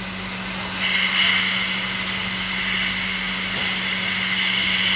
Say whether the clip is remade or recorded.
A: recorded